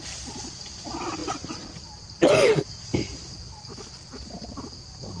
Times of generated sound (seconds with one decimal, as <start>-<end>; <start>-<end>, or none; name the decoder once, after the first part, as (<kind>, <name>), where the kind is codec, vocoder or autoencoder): 0.0-5.2 (vocoder, BigVGAN v2)